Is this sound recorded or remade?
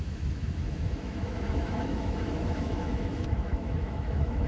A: remade